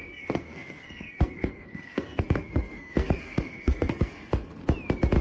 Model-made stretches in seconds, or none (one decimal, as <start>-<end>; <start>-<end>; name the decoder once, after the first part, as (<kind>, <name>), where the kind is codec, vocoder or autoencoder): 0.0-4.6 (codec, SNAC)